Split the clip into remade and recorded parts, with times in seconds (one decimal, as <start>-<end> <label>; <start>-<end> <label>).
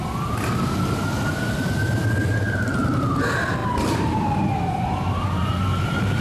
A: 0.0-3.6 recorded; 3.6-5.5 remade; 5.5-6.2 recorded